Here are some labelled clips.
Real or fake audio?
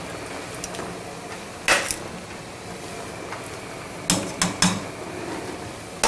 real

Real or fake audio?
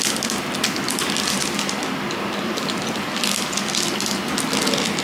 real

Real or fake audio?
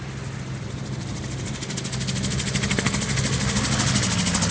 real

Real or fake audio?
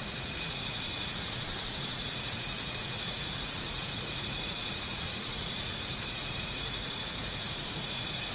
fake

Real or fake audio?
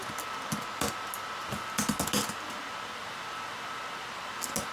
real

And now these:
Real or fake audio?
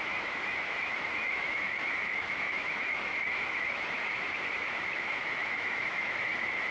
fake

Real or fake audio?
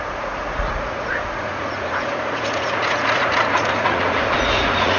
fake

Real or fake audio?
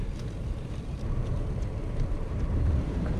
fake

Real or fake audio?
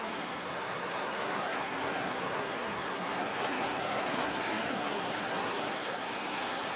fake